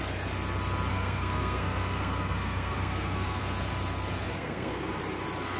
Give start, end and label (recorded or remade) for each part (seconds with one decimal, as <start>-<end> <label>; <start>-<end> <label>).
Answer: 0.0-0.9 recorded; 0.9-3.4 remade; 3.4-4.3 recorded; 4.3-4.9 remade; 4.9-5.6 recorded